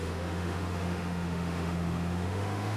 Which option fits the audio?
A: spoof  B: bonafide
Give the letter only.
A